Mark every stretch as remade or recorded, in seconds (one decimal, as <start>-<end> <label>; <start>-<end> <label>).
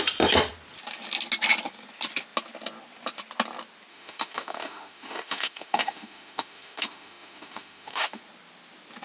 0.0-3.9 recorded; 3.9-8.2 remade; 8.2-9.0 recorded